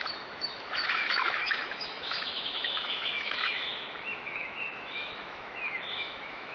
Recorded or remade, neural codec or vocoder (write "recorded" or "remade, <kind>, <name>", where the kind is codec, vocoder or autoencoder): remade, autoencoder, DAC-VAE